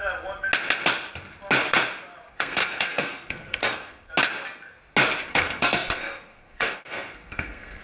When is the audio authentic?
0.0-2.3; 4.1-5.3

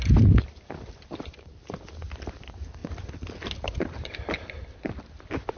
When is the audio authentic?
0.0-5.6

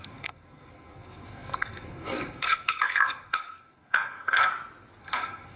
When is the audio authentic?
4.5-5.0

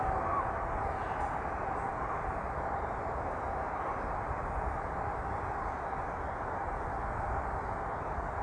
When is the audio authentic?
0.0-8.4

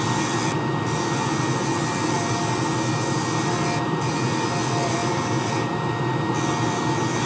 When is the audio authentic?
0.0-7.3

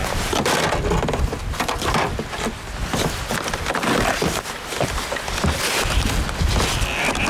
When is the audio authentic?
0.0-7.3

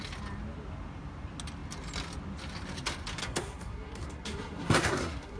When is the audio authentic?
0.0-3.2

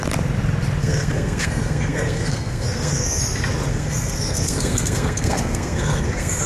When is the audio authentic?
0.0-0.8; 3.2-3.7